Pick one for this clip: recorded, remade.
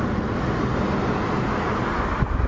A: recorded